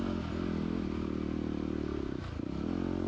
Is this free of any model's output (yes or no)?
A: yes